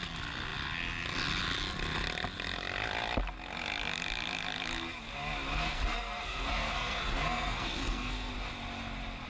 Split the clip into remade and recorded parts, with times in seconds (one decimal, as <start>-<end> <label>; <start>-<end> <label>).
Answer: 0.0-5.5 recorded; 5.5-8.3 remade; 8.3-9.3 recorded